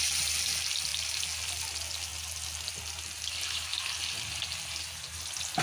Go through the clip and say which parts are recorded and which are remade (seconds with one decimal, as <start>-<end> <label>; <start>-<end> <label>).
0.0-5.6 recorded